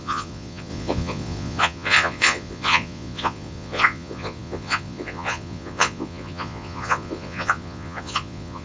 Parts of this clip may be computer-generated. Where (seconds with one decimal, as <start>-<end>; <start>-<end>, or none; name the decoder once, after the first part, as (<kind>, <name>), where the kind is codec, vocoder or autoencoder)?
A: 0.0-8.6 (vocoder, Vocos)